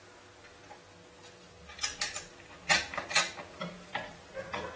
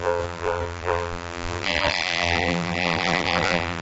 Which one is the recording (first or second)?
first